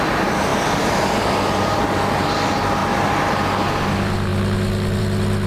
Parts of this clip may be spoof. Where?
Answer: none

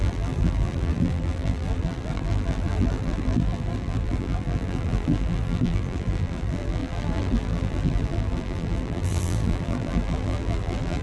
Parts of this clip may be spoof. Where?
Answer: 0.0-11.0 (vocoder, BigVGAN v2)

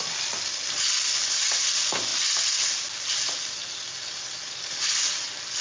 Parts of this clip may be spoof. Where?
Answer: none

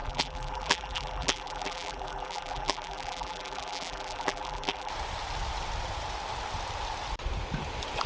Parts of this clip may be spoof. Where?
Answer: 0.0-4.9 (vocoder, BigVGAN v2)

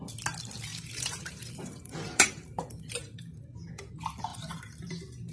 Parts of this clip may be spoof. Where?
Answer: 0.7-3.9 (vocoder, BigVGAN v2); 4.3-5.3

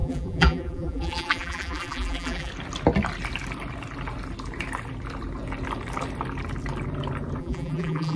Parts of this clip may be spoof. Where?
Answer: 0.0-2.5 (vocoder, BigVGAN v2); 7.4-8.2

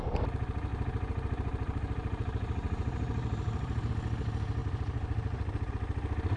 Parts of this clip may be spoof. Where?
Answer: 0.7-3.9 (vocoder, BigVGAN v2); 4.6-5.7